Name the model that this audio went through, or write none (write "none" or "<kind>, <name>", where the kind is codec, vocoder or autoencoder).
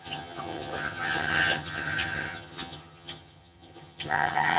vocoder, HiFi-GAN